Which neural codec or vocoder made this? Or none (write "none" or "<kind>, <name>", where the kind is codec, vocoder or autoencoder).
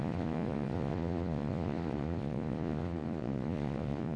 vocoder, Vocos